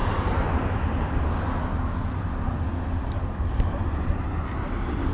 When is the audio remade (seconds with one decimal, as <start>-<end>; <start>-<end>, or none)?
none